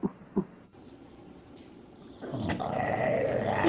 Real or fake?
fake